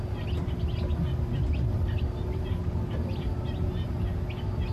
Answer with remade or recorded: recorded